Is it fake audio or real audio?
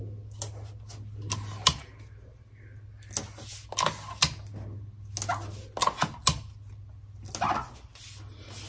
real